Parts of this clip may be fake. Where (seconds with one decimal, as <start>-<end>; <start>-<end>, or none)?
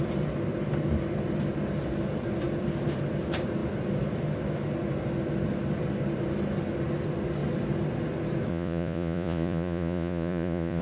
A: 8.5-10.8